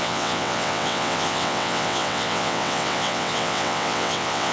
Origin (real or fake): fake